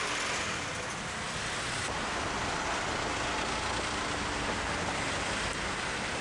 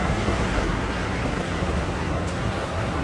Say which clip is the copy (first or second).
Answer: second